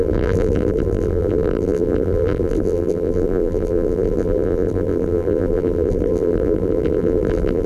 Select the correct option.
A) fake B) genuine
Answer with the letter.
A